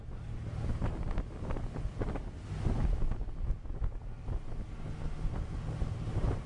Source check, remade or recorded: recorded